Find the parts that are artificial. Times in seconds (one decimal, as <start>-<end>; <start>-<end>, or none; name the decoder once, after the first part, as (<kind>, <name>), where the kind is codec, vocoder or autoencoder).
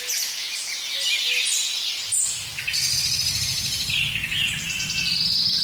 none